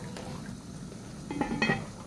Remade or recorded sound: recorded